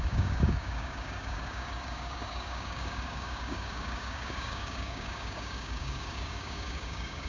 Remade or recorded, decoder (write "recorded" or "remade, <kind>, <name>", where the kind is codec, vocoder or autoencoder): remade, codec, DAC